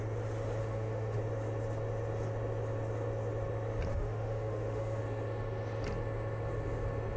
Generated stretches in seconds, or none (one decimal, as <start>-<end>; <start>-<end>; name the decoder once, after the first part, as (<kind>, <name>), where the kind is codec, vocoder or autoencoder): 0.6-1.2 (autoencoder, DAC-VAE); 3.9-5.0